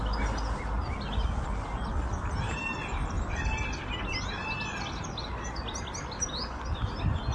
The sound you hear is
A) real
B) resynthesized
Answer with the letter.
A